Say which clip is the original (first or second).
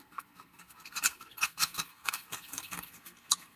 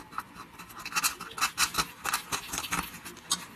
second